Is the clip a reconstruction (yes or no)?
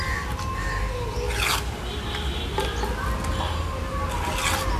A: no